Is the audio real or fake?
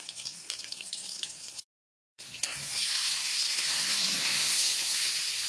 fake